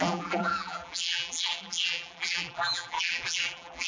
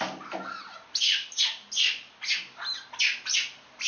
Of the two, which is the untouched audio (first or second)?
second